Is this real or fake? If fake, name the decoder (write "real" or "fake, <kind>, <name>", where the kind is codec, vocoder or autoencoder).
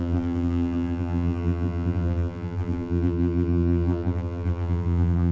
fake, vocoder, BigVGAN v2